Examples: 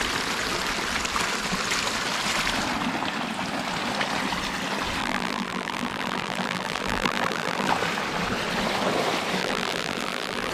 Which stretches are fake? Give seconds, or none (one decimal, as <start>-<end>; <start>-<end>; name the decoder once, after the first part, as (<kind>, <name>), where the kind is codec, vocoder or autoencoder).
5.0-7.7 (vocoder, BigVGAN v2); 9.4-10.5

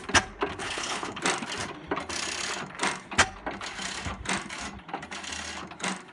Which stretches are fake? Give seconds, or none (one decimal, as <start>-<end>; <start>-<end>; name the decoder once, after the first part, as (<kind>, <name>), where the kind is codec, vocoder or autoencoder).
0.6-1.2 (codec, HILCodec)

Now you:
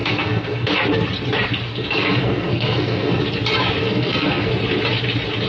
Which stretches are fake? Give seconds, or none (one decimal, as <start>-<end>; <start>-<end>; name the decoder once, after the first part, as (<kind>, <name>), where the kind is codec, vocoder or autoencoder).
0.0-0.7 (codec, SNAC); 1.7-3.2; 3.8-4.5